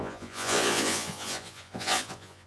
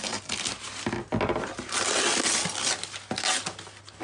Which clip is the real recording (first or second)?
second